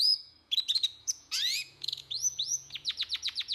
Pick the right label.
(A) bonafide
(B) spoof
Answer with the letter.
B